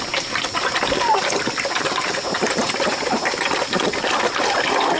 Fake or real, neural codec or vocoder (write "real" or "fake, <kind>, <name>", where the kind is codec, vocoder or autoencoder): real